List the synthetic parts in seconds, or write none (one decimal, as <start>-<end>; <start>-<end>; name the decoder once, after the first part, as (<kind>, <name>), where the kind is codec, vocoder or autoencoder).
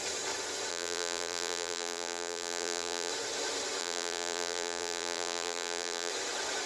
0.7-3.1 (vocoder, BigVGAN v2); 3.8-6.1